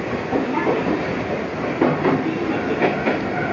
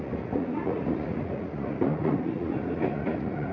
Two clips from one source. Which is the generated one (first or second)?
second